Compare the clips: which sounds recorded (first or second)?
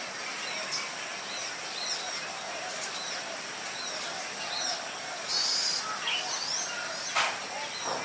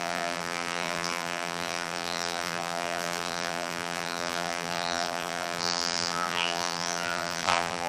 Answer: first